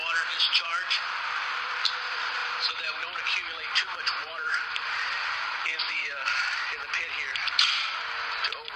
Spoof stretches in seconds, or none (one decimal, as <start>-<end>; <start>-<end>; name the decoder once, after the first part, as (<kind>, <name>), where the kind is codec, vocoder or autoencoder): 2.4-3.0 (vocoder, BigVGAN v2); 4.2-6.4; 7.4-7.9